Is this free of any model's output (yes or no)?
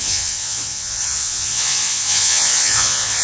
no